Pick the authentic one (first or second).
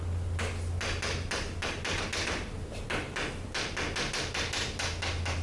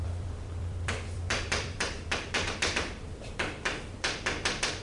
first